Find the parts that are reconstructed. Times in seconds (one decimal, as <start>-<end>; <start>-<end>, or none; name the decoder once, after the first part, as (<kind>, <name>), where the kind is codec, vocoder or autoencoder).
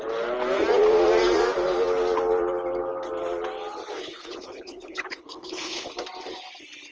3.9-5.9 (codec, HILCodec)